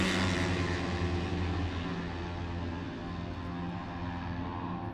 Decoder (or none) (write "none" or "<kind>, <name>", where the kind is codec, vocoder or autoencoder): none